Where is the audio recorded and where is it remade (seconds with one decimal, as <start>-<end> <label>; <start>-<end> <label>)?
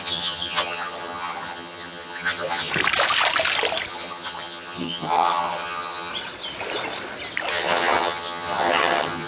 0.0-2.7 remade; 2.7-3.9 recorded; 3.9-6.1 remade; 6.1-7.5 recorded; 7.5-9.3 remade